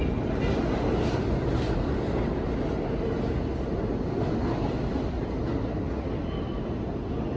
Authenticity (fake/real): real